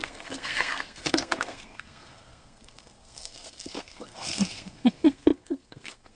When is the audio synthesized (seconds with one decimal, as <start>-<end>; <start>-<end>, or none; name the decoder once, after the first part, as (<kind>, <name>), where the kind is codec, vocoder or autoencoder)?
0.0-6.2 (codec, SNAC)